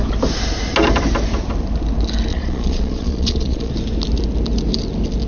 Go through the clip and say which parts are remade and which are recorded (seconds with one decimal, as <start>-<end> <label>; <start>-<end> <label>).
0.0-2.3 recorded; 2.3-3.7 remade; 3.7-5.3 recorded